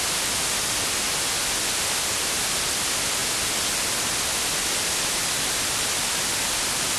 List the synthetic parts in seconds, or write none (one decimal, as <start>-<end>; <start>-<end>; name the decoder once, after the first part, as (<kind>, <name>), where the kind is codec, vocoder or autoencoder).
none